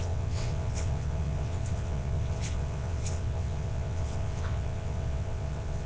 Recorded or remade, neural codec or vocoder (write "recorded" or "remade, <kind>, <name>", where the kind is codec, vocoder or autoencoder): remade, vocoder, WaveNeXt